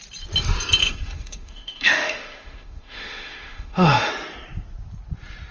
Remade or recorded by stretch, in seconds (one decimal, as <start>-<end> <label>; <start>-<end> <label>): 0.0-0.8 recorded; 0.8-4.1 remade; 4.1-5.5 recorded